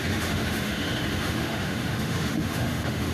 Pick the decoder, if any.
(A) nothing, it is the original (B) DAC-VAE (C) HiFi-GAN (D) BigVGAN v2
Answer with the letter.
B